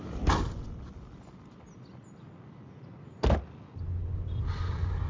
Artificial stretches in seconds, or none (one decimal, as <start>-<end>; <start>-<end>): none